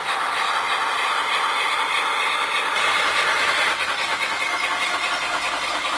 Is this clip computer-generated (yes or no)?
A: no